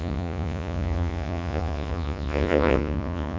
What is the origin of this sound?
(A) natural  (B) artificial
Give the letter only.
B